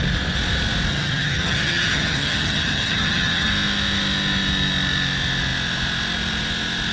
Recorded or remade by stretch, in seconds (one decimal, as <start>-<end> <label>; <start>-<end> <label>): 0.0-0.9 recorded; 0.9-3.5 remade; 3.5-6.9 recorded